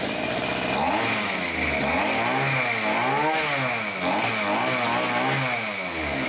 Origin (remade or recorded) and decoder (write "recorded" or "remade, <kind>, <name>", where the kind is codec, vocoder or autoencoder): recorded